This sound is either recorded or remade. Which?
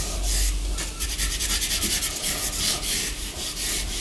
recorded